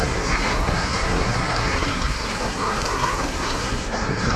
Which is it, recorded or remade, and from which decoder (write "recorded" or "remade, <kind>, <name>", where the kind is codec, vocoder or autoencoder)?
remade, codec, SNAC